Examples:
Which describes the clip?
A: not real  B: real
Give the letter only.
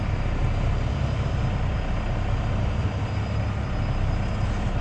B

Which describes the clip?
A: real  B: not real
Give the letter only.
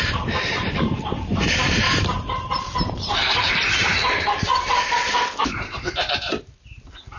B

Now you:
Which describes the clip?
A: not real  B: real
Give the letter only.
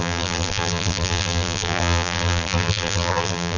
A